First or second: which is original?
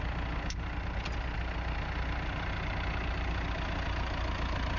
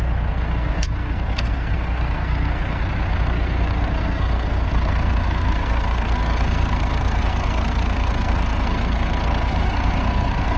first